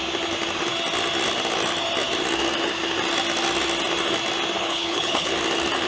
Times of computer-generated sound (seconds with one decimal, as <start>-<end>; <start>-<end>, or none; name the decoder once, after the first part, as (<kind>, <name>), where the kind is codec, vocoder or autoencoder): 4.6-5.3 (codec, HILCodec)